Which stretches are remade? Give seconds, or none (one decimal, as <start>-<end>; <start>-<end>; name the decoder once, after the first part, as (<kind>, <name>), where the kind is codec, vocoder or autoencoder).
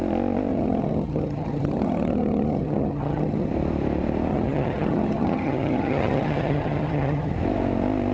0.5-3.5 (vocoder, HiFi-GAN); 4.3-7.3